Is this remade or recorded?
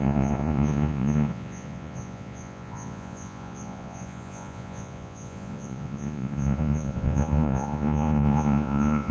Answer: remade